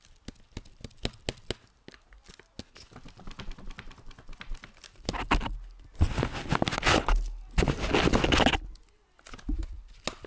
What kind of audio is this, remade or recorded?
recorded